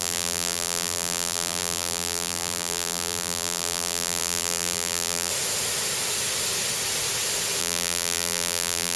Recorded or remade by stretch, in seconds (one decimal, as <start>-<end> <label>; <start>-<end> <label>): 0.0-5.3 remade; 5.3-7.6 recorded; 7.6-9.0 remade